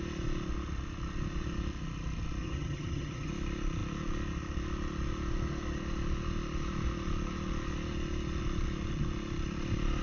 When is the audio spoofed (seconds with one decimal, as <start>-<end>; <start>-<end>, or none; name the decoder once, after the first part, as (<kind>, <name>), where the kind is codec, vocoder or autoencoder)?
2.4-3.3 (vocoder, HiFi-GAN)